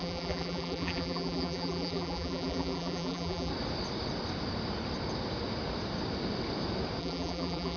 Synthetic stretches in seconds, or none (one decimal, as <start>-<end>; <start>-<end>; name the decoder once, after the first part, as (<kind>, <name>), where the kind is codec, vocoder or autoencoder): 0.0-3.5 (vocoder, BigVGAN v2); 7.0-7.8

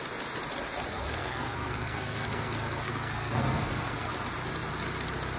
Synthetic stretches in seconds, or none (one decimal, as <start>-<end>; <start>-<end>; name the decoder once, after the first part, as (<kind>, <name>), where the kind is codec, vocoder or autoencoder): 0.9-4.1 (codec, SNAC)

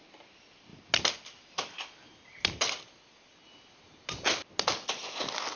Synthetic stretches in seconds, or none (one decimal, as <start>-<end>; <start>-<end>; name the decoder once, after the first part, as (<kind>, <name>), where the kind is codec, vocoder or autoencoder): none

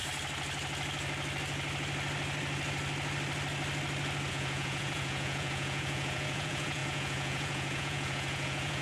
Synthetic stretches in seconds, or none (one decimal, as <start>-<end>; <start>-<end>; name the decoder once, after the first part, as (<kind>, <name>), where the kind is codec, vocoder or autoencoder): 4.3-8.8 (vocoder, Vocos)

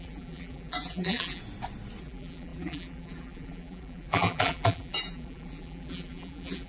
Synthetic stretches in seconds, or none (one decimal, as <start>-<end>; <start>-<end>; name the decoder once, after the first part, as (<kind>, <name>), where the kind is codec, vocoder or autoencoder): 0.0-1.4 (vocoder, BigVGAN v2); 2.0-6.7

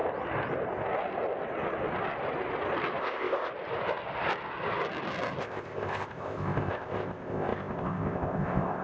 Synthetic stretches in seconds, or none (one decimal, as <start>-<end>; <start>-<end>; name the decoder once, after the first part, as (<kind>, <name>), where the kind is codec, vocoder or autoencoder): 3.0-3.5 (codec, ZipCodec); 5.4-8.8